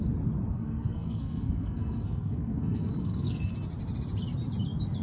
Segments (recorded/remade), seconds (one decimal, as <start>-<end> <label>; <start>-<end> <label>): 0.0-0.5 recorded; 0.5-3.5 remade; 3.5-5.0 recorded